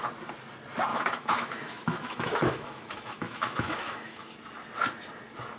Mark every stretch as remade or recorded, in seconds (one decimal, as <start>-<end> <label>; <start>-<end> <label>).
0.0-0.9 recorded; 0.9-4.3 remade; 4.3-5.6 recorded